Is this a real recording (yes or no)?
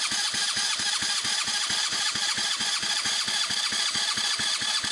no